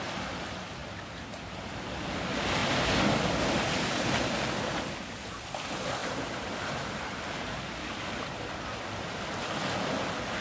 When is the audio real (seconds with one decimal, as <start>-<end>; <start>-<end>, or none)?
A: 0.0-0.8; 1.7-6.0; 7.6-10.4